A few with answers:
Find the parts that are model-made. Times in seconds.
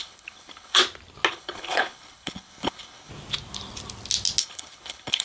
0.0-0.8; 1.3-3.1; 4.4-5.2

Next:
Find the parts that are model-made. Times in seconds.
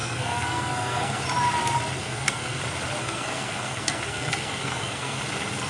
0.0-1.2; 2.0-2.6; 3.0-5.2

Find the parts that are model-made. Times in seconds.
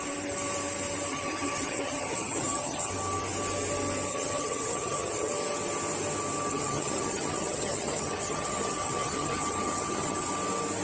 1.1-2.9; 4.1-5.3; 6.5-10.3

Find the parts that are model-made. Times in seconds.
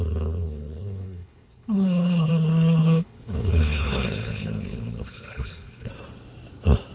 0.4-2.3; 2.8-5.9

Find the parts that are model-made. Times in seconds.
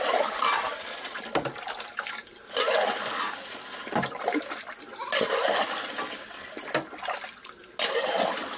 none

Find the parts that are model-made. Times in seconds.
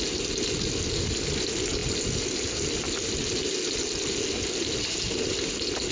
none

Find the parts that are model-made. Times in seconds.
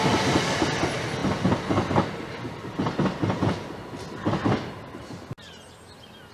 none